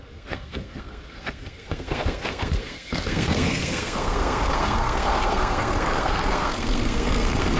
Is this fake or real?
fake